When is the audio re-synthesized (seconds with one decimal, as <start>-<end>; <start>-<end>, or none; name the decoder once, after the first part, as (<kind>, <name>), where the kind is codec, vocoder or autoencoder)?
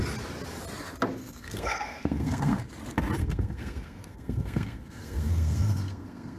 1.2-2.7 (codec, SNAC); 3.2-6.4